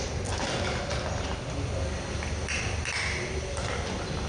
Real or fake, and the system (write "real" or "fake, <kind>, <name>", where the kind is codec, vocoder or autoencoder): real